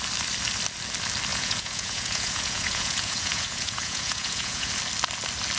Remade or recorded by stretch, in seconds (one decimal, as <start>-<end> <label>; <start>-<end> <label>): 0.0-1.3 recorded; 1.3-4.7 remade; 4.7-5.6 recorded